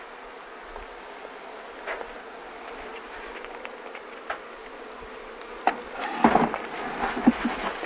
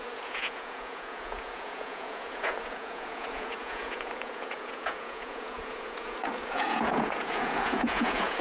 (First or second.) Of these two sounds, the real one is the first